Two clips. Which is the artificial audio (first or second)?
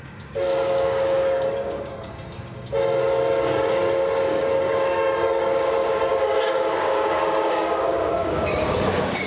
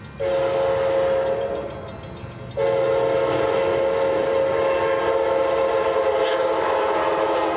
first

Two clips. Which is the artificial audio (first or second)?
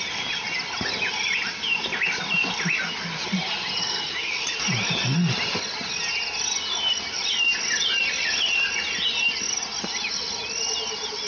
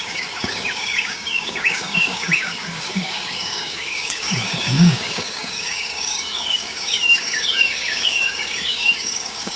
second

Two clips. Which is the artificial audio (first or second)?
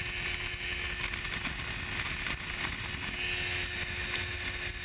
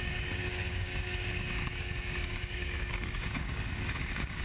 second